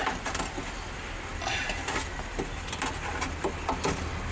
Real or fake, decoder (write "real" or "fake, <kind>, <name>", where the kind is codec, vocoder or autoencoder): real